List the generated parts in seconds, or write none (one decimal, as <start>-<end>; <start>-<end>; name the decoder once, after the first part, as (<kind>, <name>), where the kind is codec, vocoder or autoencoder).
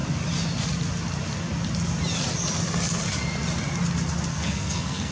4.3-5.1 (codec, SNAC)